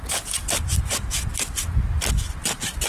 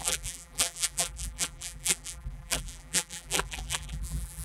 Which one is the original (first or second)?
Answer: first